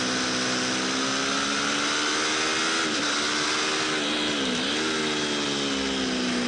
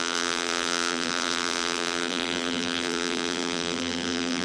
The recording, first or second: first